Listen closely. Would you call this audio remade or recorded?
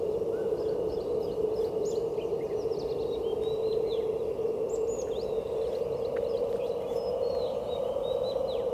recorded